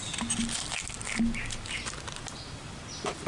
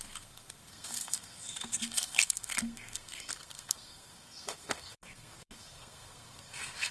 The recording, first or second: first